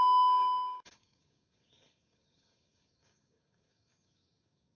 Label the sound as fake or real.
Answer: fake